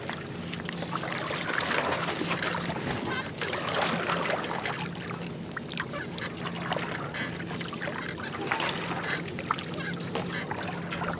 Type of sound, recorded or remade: recorded